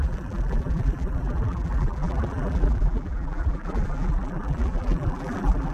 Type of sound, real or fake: fake